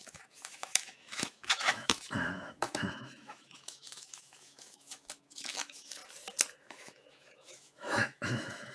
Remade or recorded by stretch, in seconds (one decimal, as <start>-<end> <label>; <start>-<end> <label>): 0.0-6.0 remade; 6.0-6.6 recorded; 6.6-8.7 remade